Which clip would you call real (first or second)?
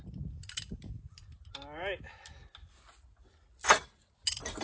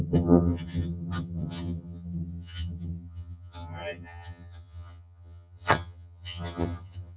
first